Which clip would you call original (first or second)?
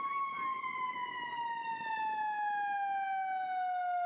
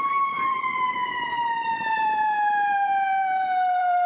first